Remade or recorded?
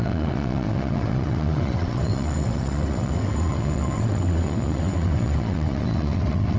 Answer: remade